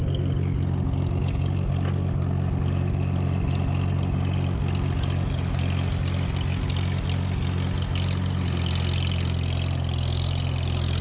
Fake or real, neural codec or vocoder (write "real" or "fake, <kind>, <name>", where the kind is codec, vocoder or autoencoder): real